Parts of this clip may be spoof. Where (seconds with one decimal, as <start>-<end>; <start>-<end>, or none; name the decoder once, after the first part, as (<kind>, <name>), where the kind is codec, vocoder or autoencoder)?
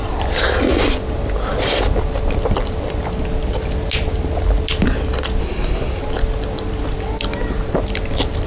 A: 5.4-6.0 (codec, SNAC)